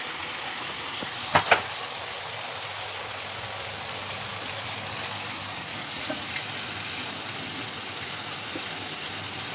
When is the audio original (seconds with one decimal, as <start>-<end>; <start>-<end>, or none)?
0.0-5.5; 6.2-9.5